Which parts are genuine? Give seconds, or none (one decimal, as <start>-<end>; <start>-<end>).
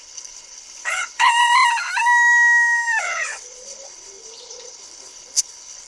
1.3-3.0